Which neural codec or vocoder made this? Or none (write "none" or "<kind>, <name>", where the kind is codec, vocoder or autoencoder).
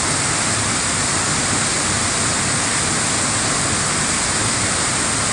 none